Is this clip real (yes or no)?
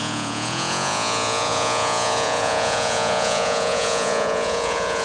no